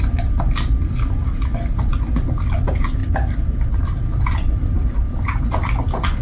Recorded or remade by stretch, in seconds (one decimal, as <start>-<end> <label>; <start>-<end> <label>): 0.0-3.0 recorded; 3.0-3.8 remade; 3.8-4.6 recorded; 4.6-5.5 remade; 5.5-6.2 recorded